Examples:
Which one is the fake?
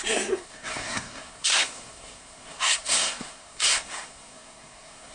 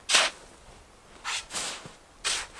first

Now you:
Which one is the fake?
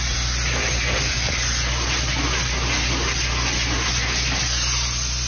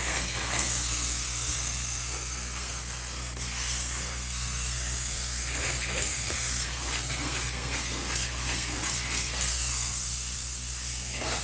second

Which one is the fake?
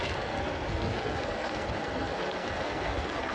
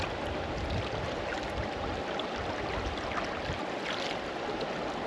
first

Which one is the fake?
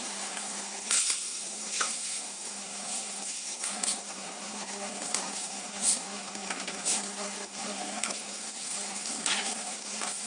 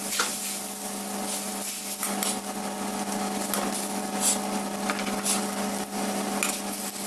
first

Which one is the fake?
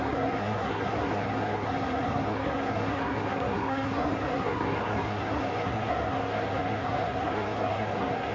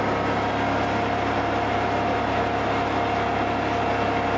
first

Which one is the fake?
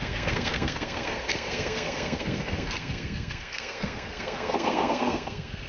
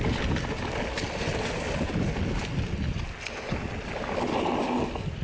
first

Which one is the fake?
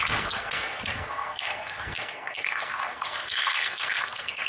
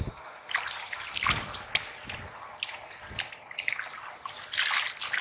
first